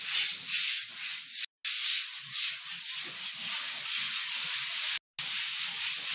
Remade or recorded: recorded